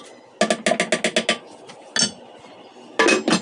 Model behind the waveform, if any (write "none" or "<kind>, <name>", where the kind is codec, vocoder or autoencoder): none